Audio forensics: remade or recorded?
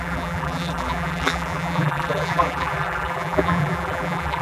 remade